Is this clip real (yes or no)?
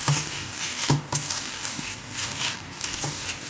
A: no